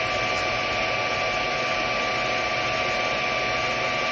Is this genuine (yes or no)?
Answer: yes